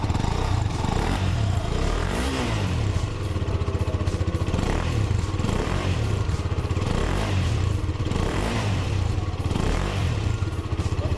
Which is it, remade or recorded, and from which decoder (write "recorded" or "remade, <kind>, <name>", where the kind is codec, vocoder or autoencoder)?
remade, vocoder, BigVGAN v2